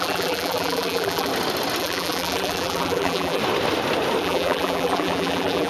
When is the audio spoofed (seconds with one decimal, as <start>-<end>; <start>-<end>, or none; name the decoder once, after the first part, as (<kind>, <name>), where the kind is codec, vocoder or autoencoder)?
0.0-1.3 (vocoder, BigVGAN v2); 1.8-3.4; 4.2-5.7